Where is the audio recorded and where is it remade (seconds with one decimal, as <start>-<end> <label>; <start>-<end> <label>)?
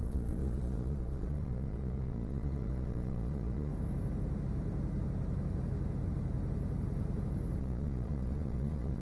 0.0-3.7 remade; 3.7-7.6 recorded; 7.6-9.0 remade